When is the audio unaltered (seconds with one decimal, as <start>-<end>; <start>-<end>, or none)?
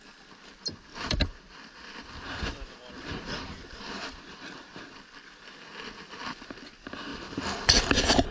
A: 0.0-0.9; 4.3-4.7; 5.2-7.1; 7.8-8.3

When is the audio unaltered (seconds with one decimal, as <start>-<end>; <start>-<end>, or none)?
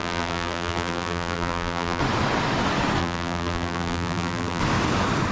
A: 2.0-3.0; 4.6-5.3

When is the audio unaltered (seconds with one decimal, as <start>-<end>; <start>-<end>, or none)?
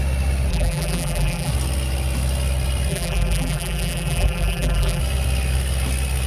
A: 0.0-0.5; 1.5-2.9; 5.0-6.3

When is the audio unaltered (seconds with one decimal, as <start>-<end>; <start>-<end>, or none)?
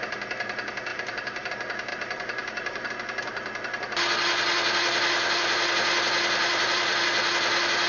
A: 0.0-0.9; 1.5-1.9; 2.9-6.4; 7.0-7.9